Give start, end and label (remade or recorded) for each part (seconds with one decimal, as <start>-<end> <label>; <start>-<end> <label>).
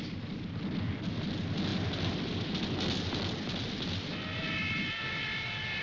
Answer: 0.0-5.8 recorded